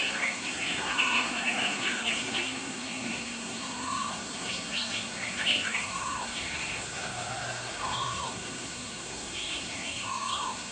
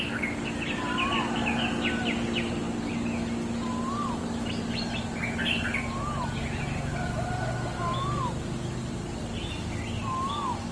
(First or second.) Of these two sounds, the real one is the second